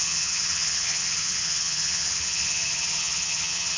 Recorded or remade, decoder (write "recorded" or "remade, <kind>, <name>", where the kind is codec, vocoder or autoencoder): remade, vocoder, HiFi-GAN